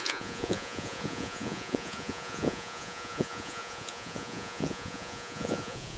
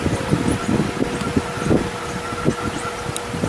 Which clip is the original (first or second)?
second